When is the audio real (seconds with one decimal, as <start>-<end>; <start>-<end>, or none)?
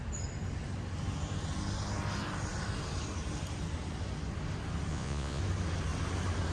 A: 0.0-4.9; 5.4-6.5